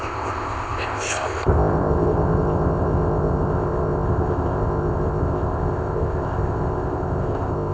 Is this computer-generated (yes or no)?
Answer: yes